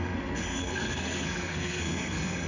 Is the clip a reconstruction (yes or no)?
yes